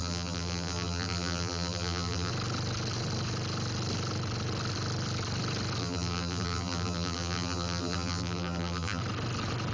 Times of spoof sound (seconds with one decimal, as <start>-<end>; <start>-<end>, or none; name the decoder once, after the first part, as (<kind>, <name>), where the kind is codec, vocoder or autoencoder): 0.0-2.3 (vocoder, BigVGAN v2); 5.8-9.0